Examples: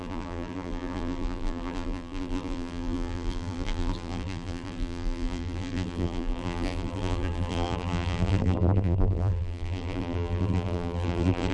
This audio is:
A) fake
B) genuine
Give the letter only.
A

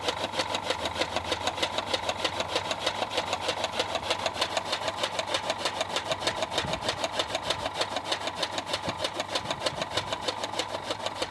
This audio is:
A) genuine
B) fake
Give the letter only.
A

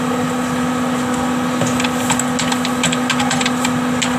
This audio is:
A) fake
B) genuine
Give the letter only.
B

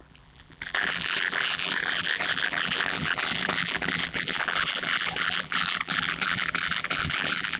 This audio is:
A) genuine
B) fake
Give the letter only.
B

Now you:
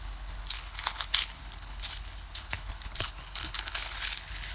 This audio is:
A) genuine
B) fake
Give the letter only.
B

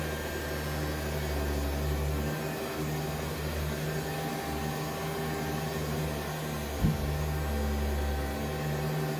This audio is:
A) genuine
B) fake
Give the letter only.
A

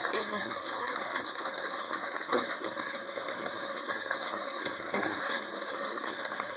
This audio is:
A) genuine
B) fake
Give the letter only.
B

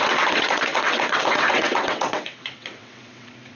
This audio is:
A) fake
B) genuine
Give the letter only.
A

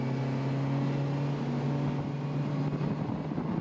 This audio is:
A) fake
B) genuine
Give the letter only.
B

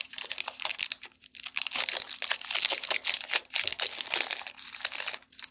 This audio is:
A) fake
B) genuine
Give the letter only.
A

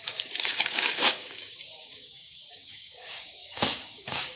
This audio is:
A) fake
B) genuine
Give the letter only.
A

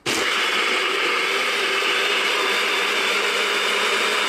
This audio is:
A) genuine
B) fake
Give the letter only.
B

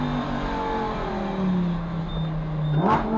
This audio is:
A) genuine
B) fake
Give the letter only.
A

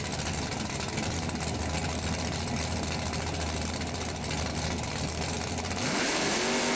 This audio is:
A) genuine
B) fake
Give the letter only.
A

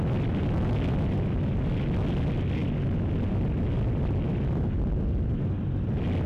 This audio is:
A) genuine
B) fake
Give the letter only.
A